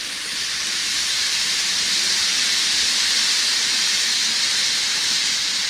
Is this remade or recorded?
remade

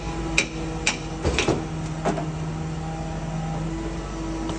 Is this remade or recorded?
recorded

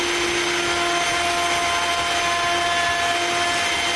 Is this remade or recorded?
recorded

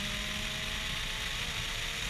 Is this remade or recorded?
recorded